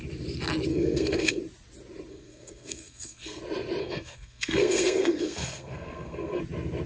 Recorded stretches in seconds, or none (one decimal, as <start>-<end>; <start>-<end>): 0.0-0.7; 1.4-2.1; 3.4-3.8; 6.4-6.9